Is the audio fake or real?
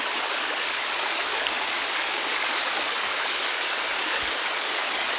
fake